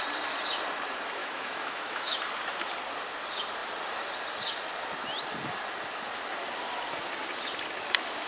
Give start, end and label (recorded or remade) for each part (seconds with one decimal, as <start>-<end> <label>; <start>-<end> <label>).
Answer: 0.0-1.2 recorded; 1.2-2.2 remade; 2.2-8.3 recorded